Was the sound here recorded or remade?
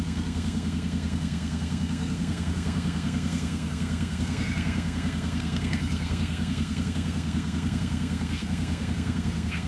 remade